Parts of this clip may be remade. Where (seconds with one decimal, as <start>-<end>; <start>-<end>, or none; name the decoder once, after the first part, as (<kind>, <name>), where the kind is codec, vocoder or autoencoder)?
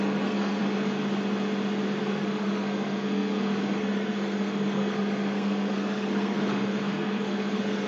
0.0-0.6 (codec, SNAC); 2.0-7.9